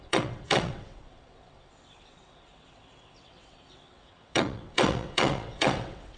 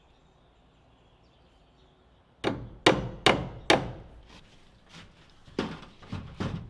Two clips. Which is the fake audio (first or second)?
first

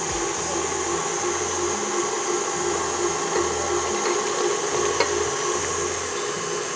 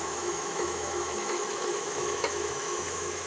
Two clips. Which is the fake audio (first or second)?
second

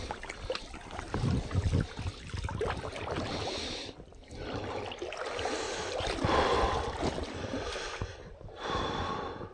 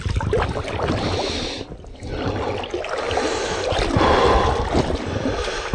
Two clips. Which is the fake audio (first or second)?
first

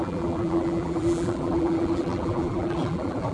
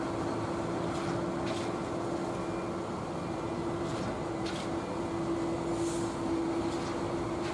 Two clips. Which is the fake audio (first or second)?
first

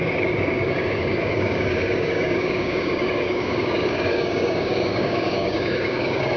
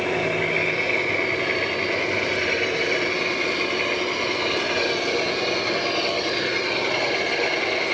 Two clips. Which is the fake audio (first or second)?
first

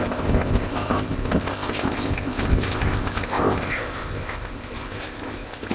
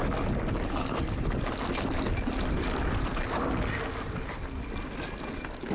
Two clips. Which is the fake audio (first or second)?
first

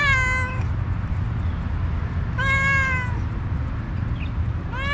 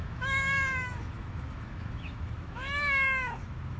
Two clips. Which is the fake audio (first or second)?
second